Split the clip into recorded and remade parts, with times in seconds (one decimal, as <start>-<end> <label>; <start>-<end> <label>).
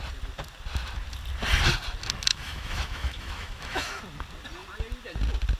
0.0-2.3 recorded; 2.3-4.0 remade; 4.0-5.6 recorded